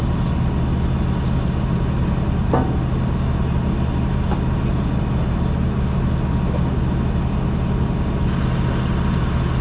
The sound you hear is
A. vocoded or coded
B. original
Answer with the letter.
B